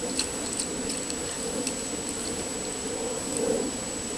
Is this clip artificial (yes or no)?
no